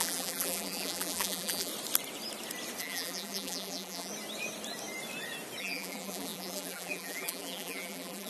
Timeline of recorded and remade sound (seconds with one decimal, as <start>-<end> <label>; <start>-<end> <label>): 0.0-1.7 remade; 1.7-2.8 recorded; 2.8-4.1 remade; 4.1-5.6 recorded; 5.6-8.3 remade